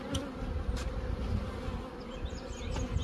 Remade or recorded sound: recorded